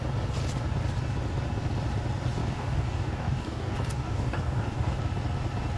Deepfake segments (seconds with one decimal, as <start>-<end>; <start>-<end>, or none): 2.4-5.0